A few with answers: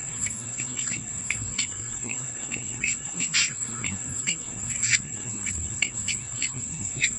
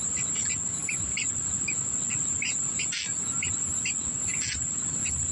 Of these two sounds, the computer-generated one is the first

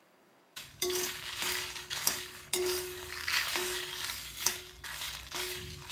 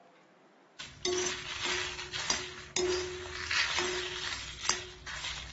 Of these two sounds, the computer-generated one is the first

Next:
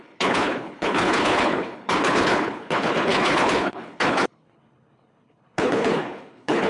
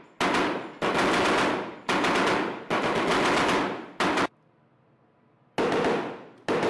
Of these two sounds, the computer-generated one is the first